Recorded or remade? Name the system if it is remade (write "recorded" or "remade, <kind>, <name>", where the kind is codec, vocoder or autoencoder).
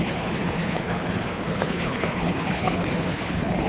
remade, codec, HILCodec